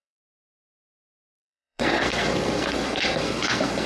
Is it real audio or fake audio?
fake